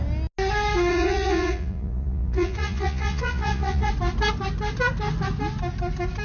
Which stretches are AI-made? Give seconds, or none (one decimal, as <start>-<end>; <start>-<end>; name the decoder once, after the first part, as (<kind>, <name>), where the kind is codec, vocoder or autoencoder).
0.9-3.9 (vocoder, Vocos)